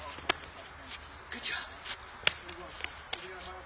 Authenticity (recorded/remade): recorded